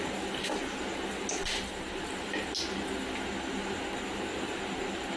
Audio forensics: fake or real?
real